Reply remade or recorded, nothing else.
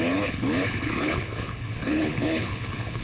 remade